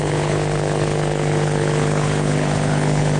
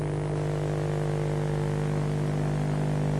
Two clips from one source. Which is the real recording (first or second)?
second